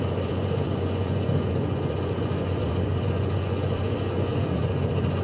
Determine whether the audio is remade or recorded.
remade